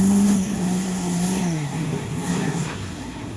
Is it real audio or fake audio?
fake